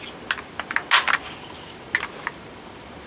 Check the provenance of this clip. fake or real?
real